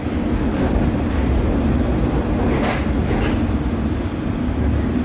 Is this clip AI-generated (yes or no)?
no